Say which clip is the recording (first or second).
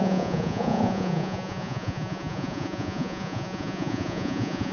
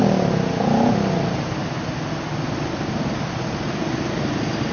second